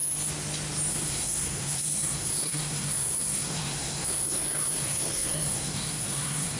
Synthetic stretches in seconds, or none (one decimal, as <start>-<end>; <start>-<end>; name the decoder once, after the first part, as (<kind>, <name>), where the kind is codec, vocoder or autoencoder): 0.9-6.6 (codec, SNAC)